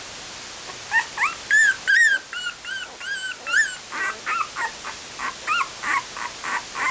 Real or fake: real